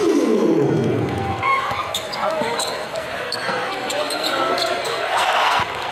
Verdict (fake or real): fake